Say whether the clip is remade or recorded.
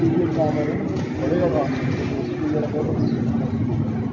recorded